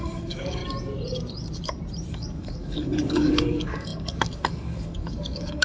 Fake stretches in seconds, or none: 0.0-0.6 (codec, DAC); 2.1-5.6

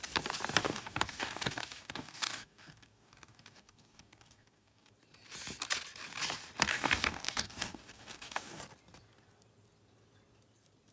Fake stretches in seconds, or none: 0.6-4.9 (codec, DAC); 6.7-8.6

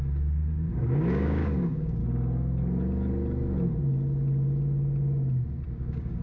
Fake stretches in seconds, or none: 0.0-2.0 (codec, DAC); 5.7-6.2

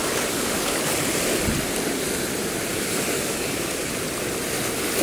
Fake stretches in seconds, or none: 0.0-0.8 (codec, DAC); 2.7-3.9

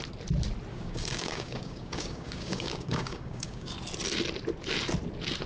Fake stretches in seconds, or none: 0.7-3.7 (codec, DAC)

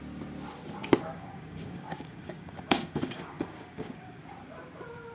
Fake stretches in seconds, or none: 1.1-4.2 (codec, DAC)

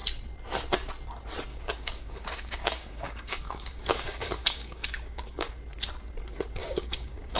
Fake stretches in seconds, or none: 1.5-5.5 (codec, DAC); 6.6-7.4